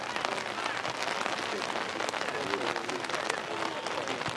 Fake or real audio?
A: real